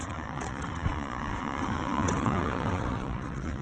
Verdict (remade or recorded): remade